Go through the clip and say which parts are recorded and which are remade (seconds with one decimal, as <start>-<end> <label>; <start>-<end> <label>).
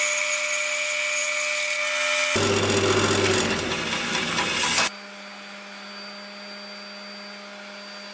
0.0-8.1 recorded